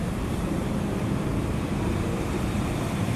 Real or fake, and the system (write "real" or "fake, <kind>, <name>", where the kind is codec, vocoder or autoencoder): fake, vocoder, BigVGAN v2